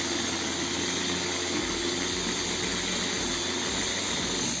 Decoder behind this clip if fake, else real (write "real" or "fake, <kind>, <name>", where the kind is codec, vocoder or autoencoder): real